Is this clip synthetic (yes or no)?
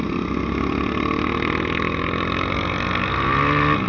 no